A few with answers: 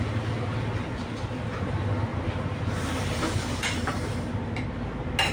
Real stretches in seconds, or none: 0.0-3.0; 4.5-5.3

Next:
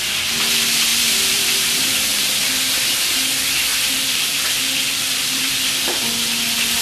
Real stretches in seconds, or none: 0.0-0.9; 2.5-3.7; 5.5-6.8

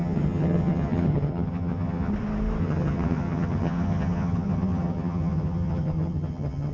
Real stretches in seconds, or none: 2.1-2.6

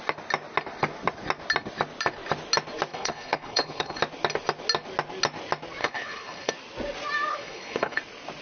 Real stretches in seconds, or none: 0.0-2.9; 4.0-5.8; 6.5-7.3; 8.0-8.4

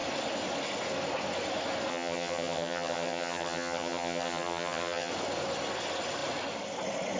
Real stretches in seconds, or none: 0.0-1.9; 5.1-7.2

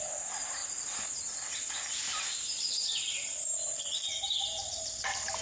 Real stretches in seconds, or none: 0.0-5.4

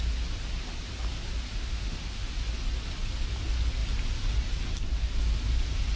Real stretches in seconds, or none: 0.0-1.6; 2.3-6.0

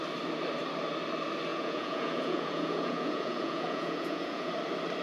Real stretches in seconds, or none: 0.0-1.5; 4.5-5.0